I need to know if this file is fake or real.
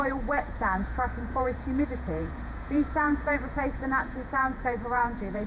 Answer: fake